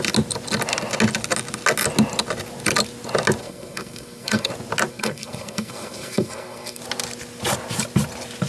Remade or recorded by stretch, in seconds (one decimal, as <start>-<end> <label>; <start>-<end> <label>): 0.0-3.4 recorded; 3.4-4.5 remade; 4.5-4.9 recorded; 4.9-6.8 remade; 6.8-8.5 recorded